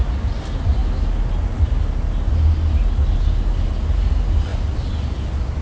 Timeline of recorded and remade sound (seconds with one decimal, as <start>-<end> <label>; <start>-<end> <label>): 0.0-5.6 recorded